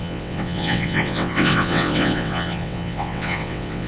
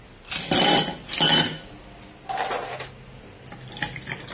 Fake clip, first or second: first